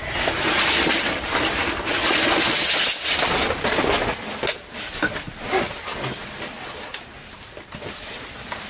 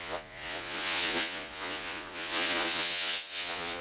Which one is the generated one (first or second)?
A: second